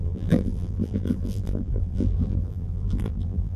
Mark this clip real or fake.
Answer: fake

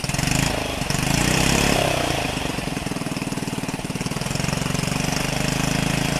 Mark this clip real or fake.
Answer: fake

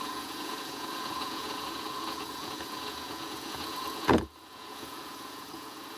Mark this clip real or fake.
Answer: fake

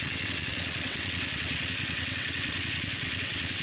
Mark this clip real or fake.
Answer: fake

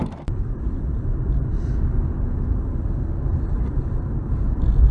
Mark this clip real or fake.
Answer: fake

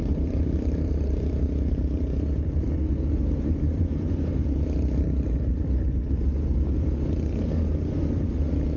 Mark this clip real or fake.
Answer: fake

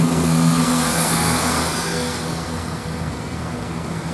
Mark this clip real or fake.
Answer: fake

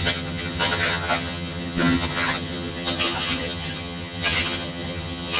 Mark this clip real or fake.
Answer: fake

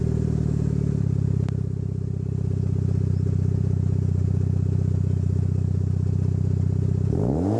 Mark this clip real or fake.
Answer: real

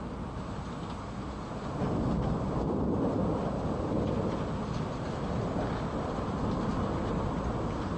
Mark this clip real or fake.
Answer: real